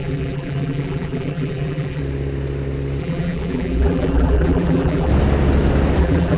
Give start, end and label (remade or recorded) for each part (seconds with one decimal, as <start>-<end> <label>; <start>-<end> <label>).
0.0-2.0 remade; 2.0-3.0 recorded; 3.0-5.1 remade; 5.1-6.0 recorded; 6.0-6.4 remade